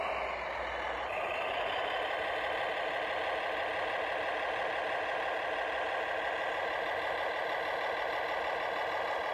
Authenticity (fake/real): real